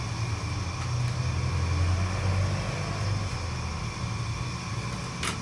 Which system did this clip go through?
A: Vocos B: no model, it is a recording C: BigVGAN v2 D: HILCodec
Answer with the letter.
B